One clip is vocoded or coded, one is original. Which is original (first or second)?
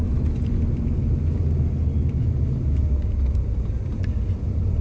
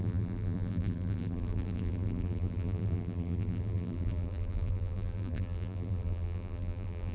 first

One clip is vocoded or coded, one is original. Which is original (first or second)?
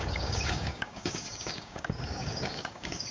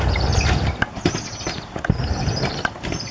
second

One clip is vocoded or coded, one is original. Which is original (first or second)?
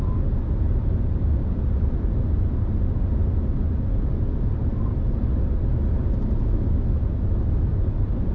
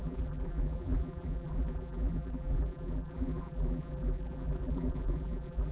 first